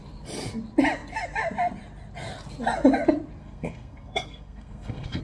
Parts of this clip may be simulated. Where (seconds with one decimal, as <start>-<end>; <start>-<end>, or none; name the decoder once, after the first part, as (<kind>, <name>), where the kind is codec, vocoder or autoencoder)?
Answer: 3.4-5.2 (codec, SNAC)